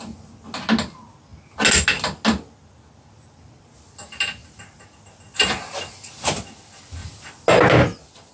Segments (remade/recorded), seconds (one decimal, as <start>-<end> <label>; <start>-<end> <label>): 0.0-8.3 recorded